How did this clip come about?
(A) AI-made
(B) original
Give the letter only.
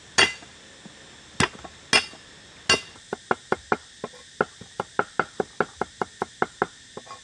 B